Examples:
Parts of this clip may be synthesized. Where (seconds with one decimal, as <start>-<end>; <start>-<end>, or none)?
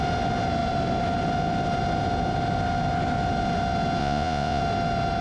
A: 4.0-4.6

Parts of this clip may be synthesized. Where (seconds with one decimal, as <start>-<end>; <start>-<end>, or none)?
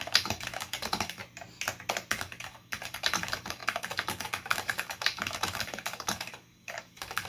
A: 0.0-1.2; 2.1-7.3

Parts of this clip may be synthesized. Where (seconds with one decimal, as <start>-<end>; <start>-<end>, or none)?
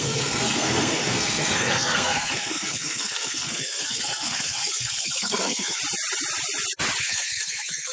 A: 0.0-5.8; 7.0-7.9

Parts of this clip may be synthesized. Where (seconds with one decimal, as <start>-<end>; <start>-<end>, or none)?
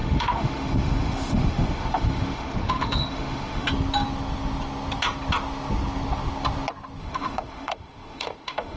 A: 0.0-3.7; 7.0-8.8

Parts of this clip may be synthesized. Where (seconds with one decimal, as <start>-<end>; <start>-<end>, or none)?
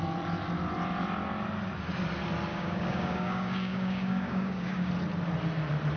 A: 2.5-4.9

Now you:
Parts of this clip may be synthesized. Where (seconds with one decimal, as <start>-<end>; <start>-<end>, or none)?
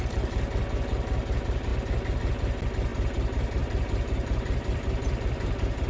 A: 2.9-5.9